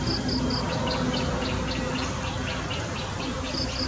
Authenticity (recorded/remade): recorded